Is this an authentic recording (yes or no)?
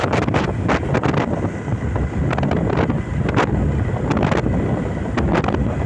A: yes